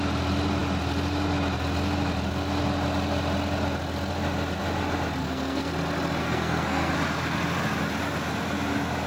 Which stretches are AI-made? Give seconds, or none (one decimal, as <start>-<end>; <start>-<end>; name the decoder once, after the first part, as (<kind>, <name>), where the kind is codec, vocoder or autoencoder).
5.2-5.7 (codec, SNAC); 6.2-6.9